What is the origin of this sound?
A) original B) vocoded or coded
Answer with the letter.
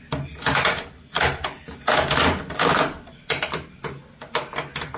A